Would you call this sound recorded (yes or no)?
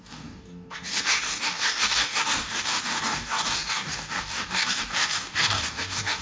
no